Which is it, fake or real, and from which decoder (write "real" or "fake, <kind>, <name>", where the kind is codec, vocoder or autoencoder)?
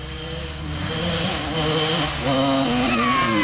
real